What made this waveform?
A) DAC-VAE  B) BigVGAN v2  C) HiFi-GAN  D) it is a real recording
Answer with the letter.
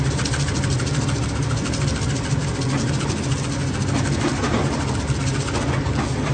D